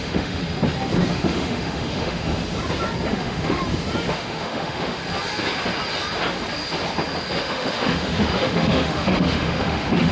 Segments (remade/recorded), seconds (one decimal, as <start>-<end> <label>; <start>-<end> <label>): 0.0-0.4 remade; 0.4-1.1 recorded; 1.1-2.4 remade; 2.4-3.1 recorded; 3.1-3.6 remade; 3.6-4.1 recorded; 4.1-5.0 remade; 5.0-7.4 recorded; 7.4-10.1 remade